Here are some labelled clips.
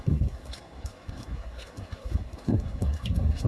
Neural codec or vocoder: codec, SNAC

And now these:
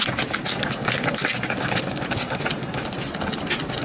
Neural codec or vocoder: none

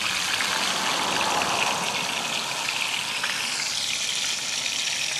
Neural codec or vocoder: none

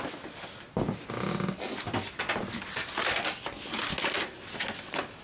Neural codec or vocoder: none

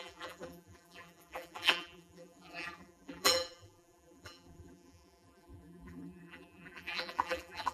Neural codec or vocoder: vocoder, BigVGAN v2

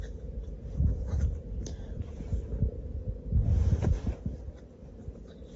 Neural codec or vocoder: none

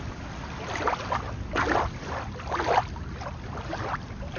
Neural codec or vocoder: none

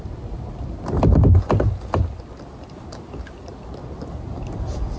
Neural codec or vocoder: none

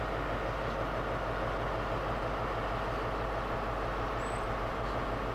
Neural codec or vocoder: none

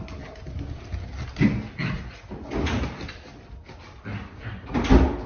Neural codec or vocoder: none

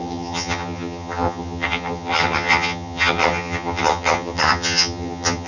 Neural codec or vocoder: vocoder, HiFi-GAN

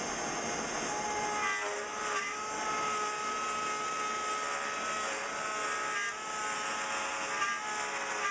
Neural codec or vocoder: none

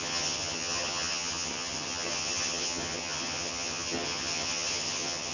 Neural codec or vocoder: vocoder, HiFi-GAN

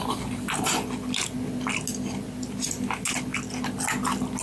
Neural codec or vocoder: none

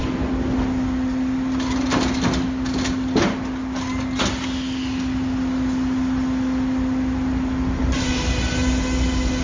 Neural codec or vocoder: none